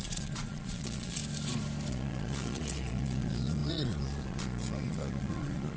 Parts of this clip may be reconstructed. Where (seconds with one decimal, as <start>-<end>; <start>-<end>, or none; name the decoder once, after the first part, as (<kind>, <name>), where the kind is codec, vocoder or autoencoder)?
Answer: 0.0-1.2 (vocoder, Vocos); 1.9-5.8